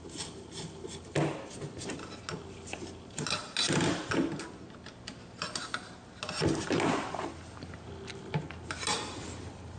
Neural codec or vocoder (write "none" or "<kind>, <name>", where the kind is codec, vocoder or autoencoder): none